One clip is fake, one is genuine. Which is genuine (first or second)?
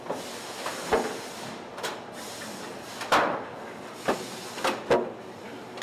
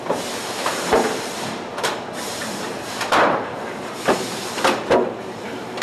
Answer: first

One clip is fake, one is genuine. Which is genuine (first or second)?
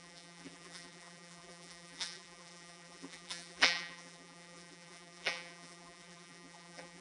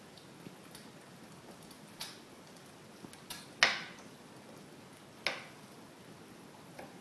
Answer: second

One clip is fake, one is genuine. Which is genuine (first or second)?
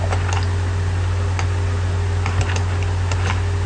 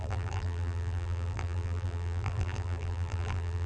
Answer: first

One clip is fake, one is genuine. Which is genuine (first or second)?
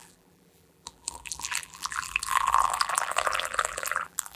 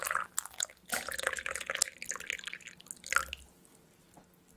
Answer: second